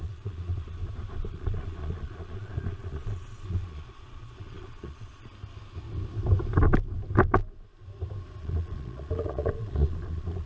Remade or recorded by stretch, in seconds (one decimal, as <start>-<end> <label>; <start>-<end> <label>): 0.0-0.8 remade; 0.8-1.3 recorded; 1.3-5.3 remade; 5.3-8.4 recorded; 8.4-10.5 remade